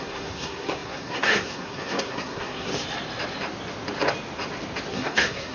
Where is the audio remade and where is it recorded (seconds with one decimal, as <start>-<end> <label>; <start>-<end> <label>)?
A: 0.0-2.7 remade; 2.7-4.9 recorded; 4.9-5.5 remade